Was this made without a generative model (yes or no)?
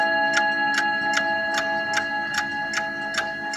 yes